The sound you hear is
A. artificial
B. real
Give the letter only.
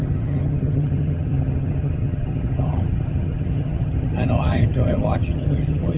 A